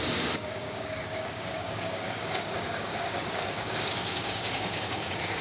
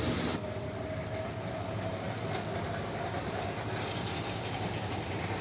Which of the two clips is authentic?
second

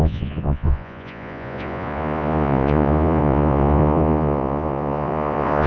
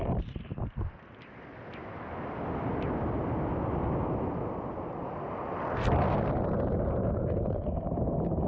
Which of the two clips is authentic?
second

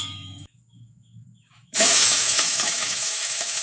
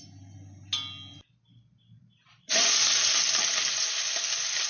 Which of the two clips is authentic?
second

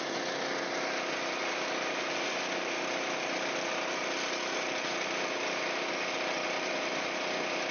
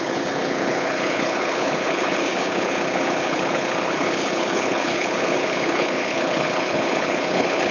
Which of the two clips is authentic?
first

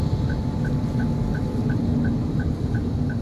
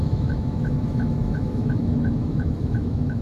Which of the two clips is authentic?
first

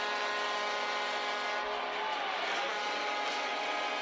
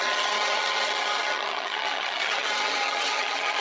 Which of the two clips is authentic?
first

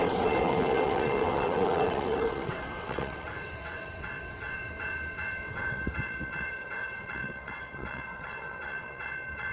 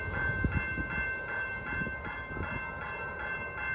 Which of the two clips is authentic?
second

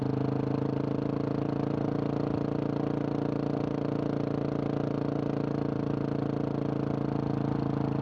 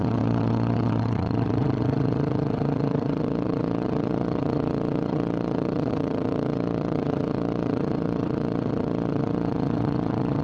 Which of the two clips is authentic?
first